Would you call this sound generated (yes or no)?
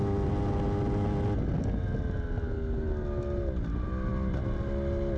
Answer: no